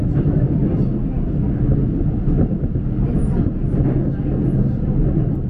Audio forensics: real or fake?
real